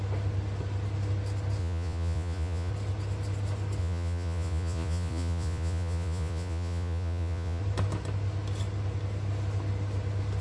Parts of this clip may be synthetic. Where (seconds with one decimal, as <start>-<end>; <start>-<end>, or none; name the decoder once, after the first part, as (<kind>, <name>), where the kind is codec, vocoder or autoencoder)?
1.6-2.7 (vocoder, Vocos); 3.8-7.6